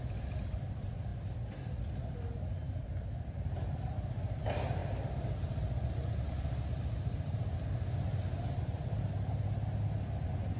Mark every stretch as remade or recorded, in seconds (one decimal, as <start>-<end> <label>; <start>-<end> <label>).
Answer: 0.0-10.6 recorded